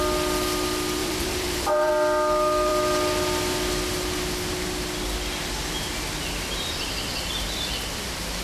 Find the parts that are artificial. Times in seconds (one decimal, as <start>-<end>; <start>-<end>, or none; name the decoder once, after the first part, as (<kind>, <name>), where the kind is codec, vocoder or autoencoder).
1.0-1.9 (vocoder, BigVGAN v2)